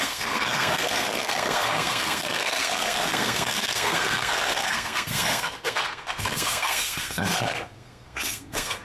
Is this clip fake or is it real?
fake